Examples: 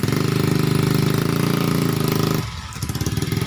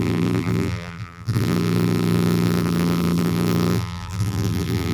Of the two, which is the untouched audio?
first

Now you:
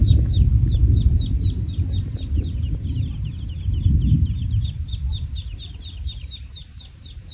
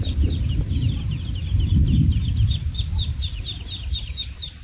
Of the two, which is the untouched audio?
first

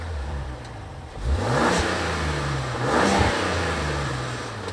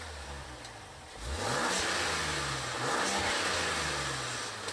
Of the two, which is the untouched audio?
second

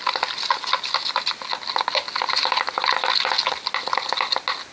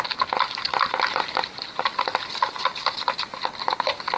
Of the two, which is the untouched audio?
first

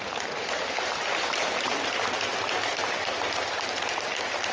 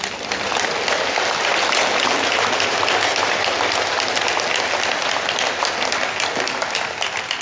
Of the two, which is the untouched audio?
second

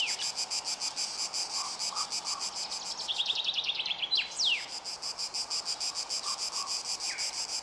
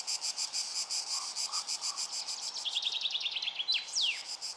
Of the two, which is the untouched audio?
first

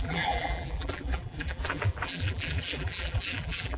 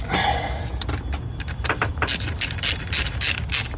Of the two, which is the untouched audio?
second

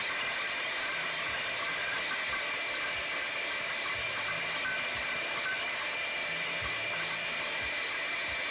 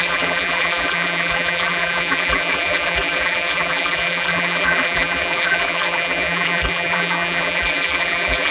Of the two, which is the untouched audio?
first